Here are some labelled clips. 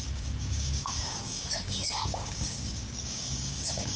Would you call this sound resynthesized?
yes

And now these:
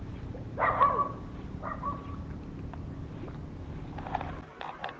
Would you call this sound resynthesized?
no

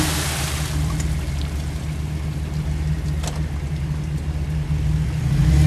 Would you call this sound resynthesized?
no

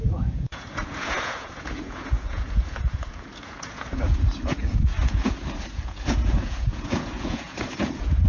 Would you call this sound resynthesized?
yes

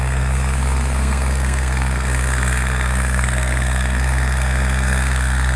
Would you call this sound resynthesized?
yes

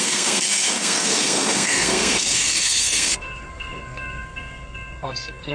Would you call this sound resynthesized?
yes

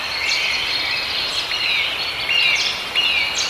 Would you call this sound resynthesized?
no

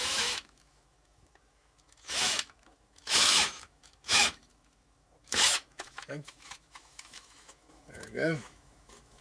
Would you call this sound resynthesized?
yes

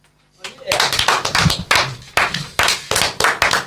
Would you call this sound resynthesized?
no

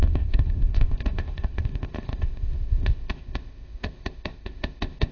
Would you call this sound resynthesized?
yes